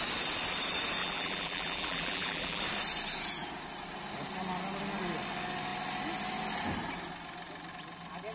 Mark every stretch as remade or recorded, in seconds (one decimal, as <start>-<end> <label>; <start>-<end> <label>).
0.0-1.0 recorded; 1.0-2.6 remade; 2.6-8.3 recorded